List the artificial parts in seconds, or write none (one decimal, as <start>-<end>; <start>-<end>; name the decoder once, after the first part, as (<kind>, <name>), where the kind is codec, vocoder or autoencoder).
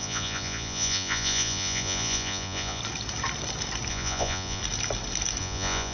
0.0-2.8 (vocoder, Vocos); 3.9-4.6; 5.4-5.9